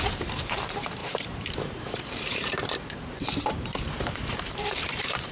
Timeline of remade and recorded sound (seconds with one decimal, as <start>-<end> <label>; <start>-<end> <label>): 0.0-5.3 remade